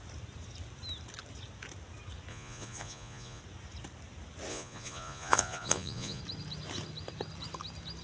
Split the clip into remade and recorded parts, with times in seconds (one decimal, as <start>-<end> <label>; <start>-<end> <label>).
0.0-2.3 recorded; 2.3-3.4 remade; 3.4-4.5 recorded; 4.5-6.2 remade; 6.2-8.0 recorded